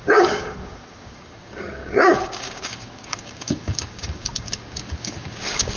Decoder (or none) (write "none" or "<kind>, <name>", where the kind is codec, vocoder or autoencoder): codec, DAC